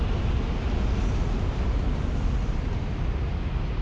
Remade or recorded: recorded